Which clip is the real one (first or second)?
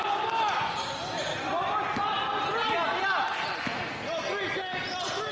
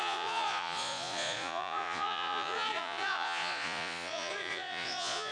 first